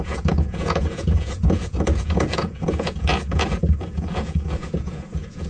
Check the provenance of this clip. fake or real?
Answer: fake